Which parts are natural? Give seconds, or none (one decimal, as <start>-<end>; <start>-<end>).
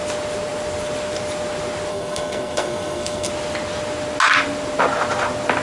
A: 0.0-1.9; 3.3-5.6